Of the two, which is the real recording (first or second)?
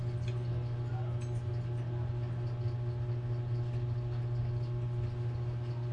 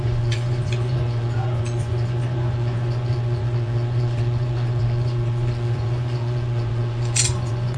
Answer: first